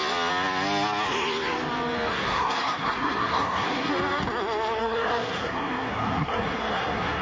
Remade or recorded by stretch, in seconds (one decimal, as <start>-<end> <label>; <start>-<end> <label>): 0.0-2.1 recorded; 2.1-3.9 remade; 3.9-4.8 recorded; 4.8-7.2 remade

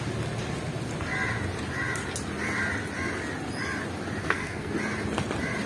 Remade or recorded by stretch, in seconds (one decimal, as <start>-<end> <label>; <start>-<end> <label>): 0.0-4.2 recorded; 4.2-4.7 remade; 4.7-5.7 recorded